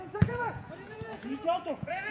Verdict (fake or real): fake